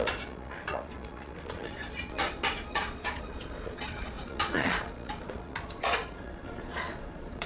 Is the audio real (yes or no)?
no